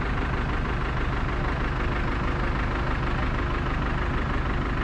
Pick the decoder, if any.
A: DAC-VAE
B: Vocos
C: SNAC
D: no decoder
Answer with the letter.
D